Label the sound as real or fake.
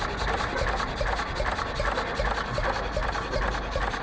real